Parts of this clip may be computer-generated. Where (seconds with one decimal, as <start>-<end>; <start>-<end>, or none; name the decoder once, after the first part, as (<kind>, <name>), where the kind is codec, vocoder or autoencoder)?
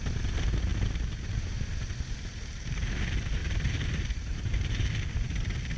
0.7-1.9 (vocoder, BigVGAN v2); 3.4-5.0